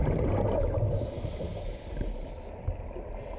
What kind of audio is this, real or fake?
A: real